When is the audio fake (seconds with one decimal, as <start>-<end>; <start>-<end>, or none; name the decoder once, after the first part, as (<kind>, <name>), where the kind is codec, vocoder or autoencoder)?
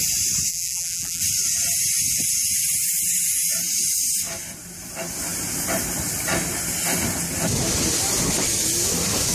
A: 0.5-1.2 (vocoder, BigVGAN v2)